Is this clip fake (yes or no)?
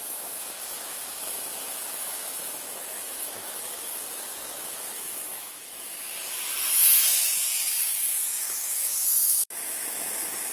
yes